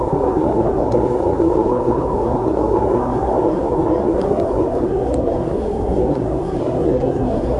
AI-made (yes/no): yes